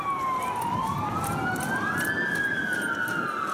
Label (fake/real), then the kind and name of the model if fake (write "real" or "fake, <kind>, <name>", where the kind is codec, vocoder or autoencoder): real